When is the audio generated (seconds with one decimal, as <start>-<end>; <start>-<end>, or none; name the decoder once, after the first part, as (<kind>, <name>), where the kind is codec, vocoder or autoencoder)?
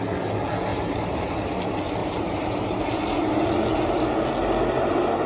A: 0.7-1.3 (vocoder, BigVGAN v2); 2.0-3.0